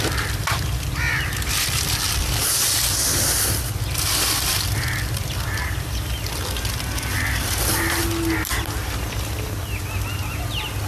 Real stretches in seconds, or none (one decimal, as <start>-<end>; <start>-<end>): 8.0-10.1